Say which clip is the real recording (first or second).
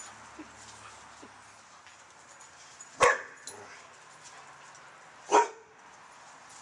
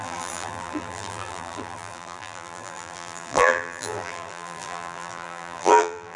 first